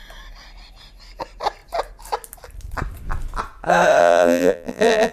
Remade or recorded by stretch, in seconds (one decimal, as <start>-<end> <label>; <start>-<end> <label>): 0.0-4.0 recorded; 4.0-5.1 remade